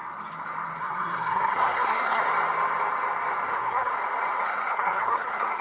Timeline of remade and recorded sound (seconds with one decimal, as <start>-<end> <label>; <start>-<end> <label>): 0.0-0.8 recorded; 0.8-2.2 remade; 2.2-3.5 recorded; 3.5-3.9 remade; 3.9-4.4 recorded; 4.4-5.6 remade